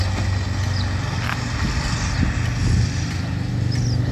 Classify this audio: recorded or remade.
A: recorded